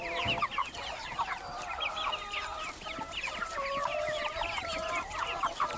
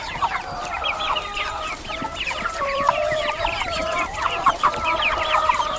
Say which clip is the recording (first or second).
first